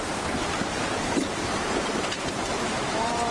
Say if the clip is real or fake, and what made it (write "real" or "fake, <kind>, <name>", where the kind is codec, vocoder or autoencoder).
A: fake, vocoder, BigVGAN v2